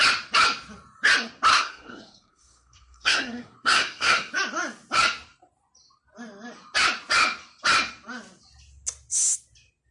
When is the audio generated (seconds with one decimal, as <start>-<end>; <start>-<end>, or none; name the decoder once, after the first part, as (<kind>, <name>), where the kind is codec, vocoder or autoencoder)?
1.5-4.3 (codec, SNAC)